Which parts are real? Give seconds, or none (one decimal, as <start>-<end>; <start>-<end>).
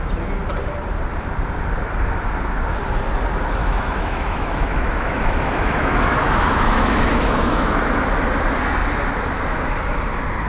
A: 0.0-3.6; 7.8-10.5